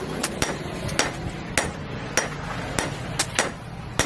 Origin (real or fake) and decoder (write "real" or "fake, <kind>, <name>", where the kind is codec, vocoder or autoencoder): real